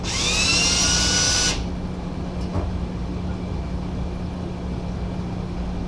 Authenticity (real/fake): real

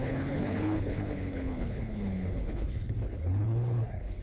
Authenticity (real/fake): fake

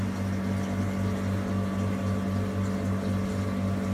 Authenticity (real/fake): real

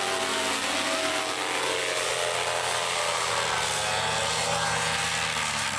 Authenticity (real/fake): real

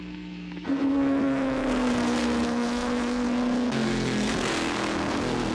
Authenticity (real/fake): fake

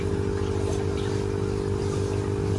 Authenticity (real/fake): real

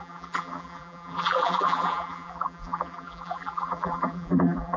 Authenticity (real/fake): fake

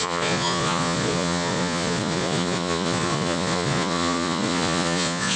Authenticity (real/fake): fake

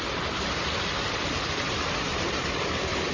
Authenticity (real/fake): real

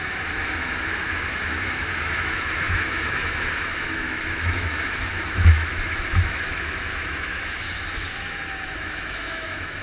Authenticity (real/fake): fake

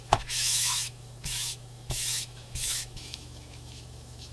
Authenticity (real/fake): fake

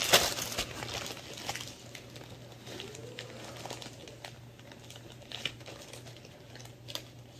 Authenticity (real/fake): real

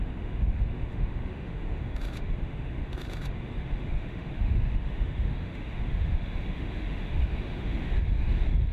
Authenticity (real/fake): fake